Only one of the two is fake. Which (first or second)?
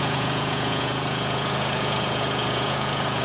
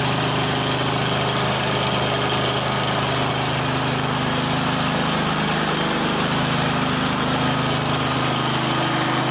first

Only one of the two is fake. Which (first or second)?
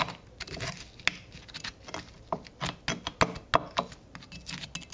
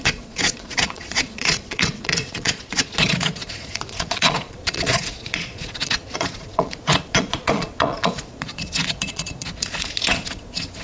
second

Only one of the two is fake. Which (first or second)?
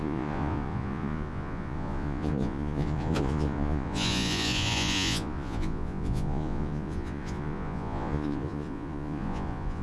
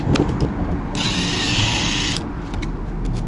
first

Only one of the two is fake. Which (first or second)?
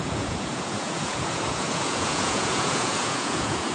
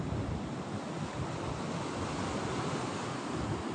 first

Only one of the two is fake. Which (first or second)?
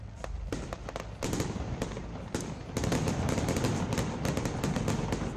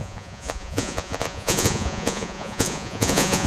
second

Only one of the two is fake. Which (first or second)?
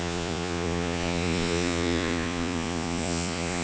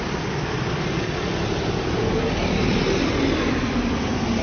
first